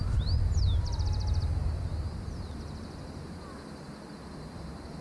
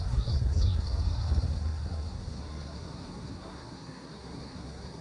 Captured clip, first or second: first